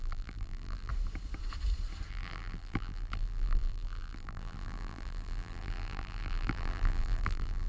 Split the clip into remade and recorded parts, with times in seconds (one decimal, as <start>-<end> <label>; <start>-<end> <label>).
0.0-0.9 remade; 0.9-2.1 recorded; 2.1-7.7 remade